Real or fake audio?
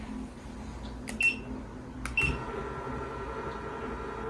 real